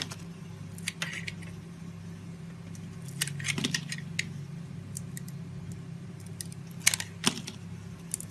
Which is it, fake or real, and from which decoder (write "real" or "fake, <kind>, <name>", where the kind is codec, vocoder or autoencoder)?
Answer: real